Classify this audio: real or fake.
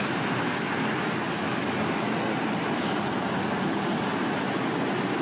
real